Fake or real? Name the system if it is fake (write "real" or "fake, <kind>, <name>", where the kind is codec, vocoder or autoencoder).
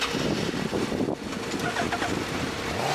real